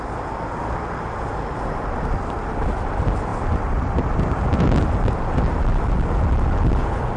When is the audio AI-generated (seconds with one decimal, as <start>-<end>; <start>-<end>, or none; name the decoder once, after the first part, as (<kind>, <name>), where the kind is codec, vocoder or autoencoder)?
none